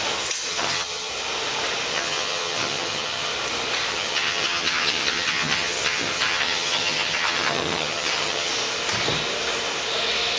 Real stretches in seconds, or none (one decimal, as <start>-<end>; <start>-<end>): 0.0-0.5; 1.1-1.9; 3.3-3.9; 8.5-10.4

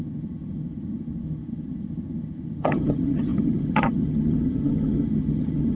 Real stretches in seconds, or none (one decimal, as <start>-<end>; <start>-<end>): none

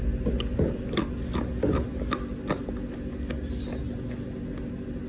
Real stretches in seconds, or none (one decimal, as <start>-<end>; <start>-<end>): 0.0-5.1

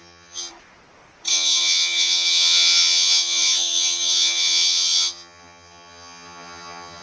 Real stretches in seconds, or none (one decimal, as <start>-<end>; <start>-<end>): 0.5-1.3

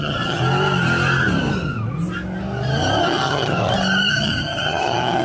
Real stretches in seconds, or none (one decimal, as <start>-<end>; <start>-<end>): 0.4-3.0; 3.6-4.1

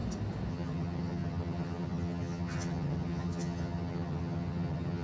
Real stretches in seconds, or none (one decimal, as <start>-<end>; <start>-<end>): 0.0-0.5

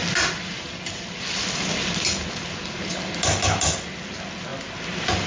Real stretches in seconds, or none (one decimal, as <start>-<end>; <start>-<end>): 0.0-5.3